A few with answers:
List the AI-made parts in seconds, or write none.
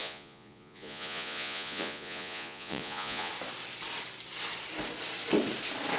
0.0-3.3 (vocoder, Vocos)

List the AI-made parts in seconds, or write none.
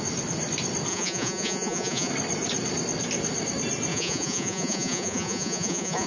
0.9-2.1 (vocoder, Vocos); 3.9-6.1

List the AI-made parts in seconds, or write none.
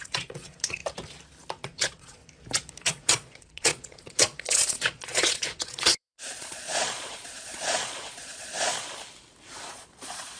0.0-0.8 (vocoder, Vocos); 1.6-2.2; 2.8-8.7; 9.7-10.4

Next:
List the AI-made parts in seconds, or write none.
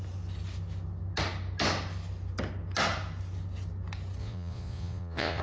4.2-5.4 (vocoder, Vocos)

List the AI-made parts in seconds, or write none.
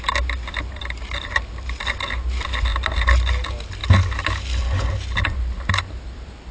none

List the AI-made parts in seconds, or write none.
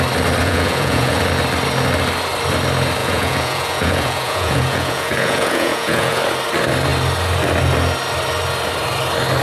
0.4-1.2 (vocoder, Vocos); 3.0-6.2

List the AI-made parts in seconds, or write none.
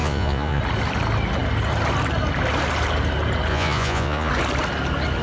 0.0-0.6 (vocoder, Vocos); 3.5-4.3